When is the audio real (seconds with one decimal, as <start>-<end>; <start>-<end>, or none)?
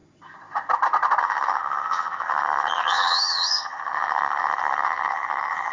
0.0-1.2